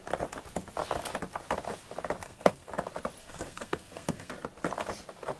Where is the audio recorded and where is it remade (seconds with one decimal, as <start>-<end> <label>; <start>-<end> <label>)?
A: 0.0-2.2 recorded; 2.2-2.7 remade; 2.7-3.2 recorded; 3.2-4.3 remade; 4.3-5.4 recorded